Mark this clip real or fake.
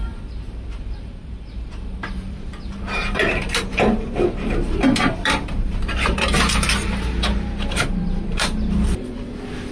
fake